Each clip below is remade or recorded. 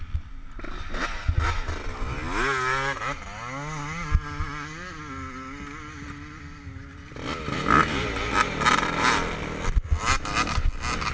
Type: recorded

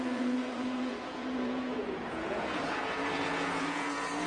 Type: remade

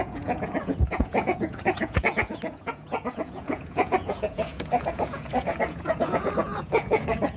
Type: remade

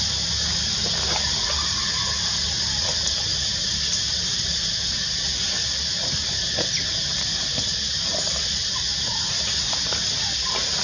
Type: recorded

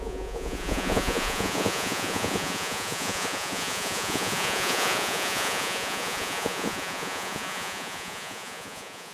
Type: remade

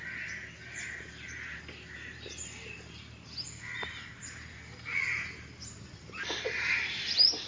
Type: recorded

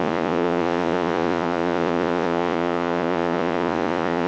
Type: remade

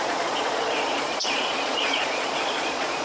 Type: remade